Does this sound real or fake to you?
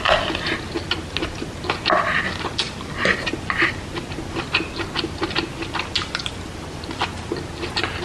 real